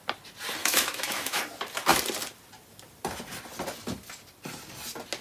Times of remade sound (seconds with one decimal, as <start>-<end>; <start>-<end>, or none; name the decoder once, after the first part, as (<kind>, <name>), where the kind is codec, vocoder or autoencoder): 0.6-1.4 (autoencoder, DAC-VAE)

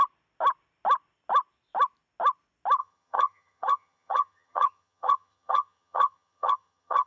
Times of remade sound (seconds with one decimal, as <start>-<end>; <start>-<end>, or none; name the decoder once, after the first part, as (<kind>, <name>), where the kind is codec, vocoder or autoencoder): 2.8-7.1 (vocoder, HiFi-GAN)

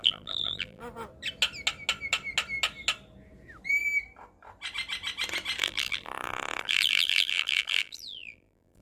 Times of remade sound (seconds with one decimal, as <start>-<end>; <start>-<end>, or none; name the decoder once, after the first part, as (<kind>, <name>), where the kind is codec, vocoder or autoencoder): 0.0-0.8 (vocoder, BigVGAN v2); 5.6-8.8